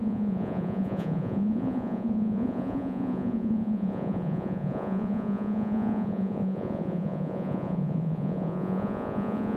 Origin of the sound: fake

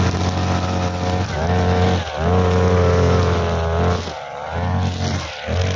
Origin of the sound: real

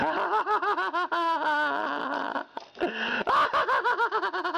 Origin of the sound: real